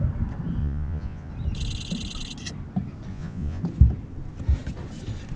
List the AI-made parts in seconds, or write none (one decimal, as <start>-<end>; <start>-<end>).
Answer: 0.6-1.3; 3.1-3.6